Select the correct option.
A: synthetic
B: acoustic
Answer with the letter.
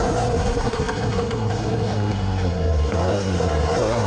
A